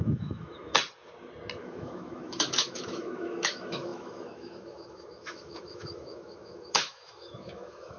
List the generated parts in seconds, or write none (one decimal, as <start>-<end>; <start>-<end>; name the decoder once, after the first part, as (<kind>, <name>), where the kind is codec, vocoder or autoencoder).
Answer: 0.0-0.7 (autoencoder, DAC-VAE); 1.6-8.0